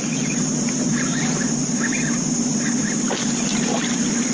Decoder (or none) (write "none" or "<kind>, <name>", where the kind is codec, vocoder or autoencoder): none